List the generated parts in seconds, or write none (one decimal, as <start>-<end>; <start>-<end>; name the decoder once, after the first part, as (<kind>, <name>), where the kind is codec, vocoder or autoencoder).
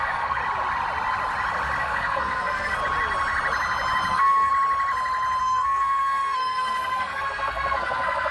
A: 0.0-0.4 (codec, SNAC); 1.8-2.8; 4.1-4.5; 5.4-8.3